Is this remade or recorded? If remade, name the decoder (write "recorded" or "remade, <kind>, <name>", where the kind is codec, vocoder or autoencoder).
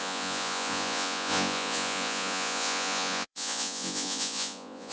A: remade, vocoder, Vocos